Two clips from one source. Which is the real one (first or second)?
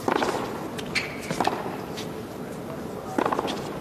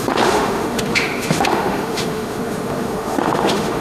first